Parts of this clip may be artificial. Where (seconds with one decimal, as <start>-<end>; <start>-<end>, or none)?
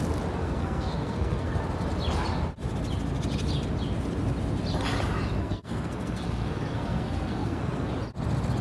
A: 0.4-1.6; 5.4-7.9